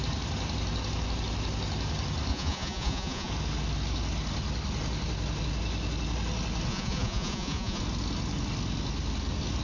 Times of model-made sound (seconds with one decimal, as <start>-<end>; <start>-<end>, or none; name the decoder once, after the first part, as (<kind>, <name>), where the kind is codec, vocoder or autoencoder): 2.3-3.3 (vocoder, Vocos); 6.7-7.8